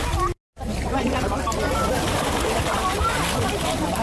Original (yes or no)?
yes